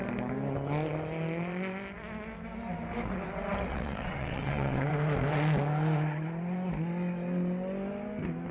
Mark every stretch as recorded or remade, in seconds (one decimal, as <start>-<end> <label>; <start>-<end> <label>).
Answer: 0.0-3.7 recorded; 3.7-4.9 remade; 4.9-8.5 recorded